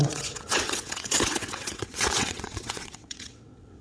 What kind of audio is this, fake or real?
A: fake